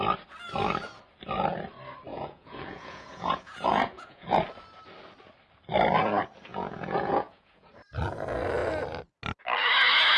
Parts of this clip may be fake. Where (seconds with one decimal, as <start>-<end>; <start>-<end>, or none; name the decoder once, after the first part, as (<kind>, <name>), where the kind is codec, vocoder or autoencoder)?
2.1-4.4 (vocoder, Vocos); 6.5-7.7